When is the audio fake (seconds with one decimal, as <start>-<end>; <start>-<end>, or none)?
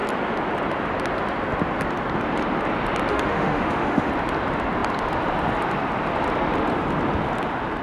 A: 3.1-4.1